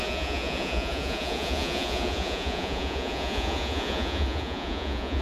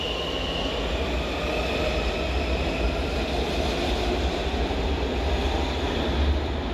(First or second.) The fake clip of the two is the first